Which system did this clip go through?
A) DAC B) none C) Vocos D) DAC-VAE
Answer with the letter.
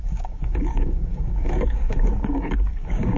A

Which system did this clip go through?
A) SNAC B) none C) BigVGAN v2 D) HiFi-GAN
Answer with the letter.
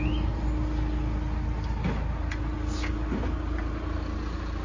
B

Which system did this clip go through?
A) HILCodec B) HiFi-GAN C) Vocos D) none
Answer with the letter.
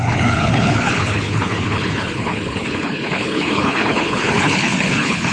A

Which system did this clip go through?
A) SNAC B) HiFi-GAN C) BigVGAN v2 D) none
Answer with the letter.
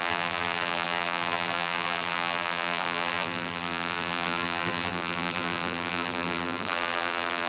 C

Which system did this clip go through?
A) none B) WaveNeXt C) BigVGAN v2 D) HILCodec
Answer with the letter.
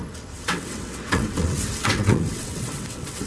B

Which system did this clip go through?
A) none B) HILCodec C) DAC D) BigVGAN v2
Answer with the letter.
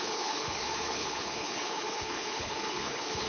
B